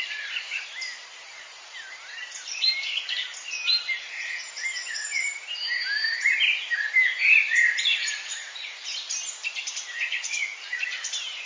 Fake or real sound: fake